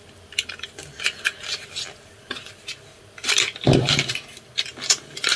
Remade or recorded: remade